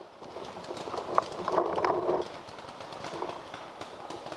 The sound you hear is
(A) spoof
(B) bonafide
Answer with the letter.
B